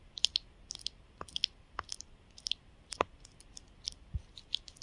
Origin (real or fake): real